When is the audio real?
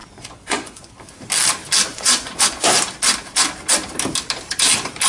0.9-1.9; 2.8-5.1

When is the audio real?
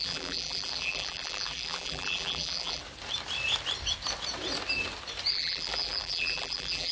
2.8-5.3